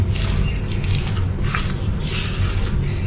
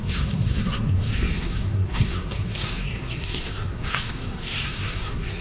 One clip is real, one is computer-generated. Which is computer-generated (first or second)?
second